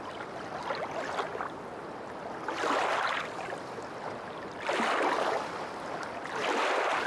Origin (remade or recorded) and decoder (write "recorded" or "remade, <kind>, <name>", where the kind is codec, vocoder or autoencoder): recorded